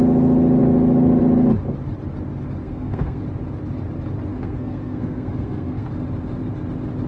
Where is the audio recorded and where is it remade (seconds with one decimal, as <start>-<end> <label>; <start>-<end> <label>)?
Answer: 0.0-2.6 recorded; 2.6-3.2 remade; 3.2-4.3 recorded; 4.3-5.9 remade; 5.9-7.1 recorded